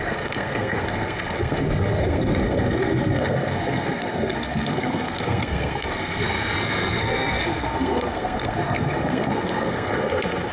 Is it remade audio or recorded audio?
remade